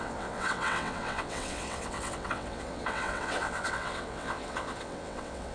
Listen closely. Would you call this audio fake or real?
fake